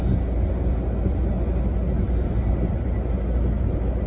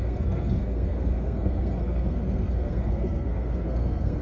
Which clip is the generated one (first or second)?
second